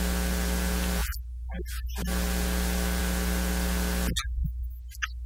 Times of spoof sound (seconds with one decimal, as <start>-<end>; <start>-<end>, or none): none